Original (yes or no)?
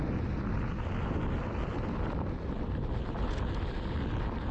yes